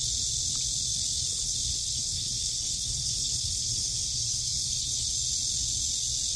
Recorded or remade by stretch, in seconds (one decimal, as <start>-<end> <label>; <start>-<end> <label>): 0.0-1.3 recorded; 1.3-5.1 remade; 5.1-6.4 recorded